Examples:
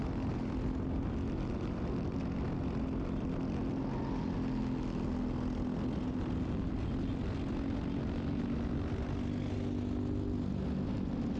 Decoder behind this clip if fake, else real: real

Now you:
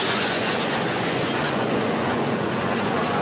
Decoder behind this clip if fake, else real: fake, vocoder, Vocos